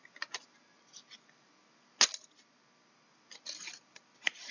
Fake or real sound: real